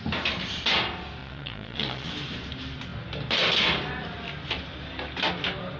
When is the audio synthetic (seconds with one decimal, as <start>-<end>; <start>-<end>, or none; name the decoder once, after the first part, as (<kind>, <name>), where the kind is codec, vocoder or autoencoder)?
1.2-2.1 (vocoder, Vocos)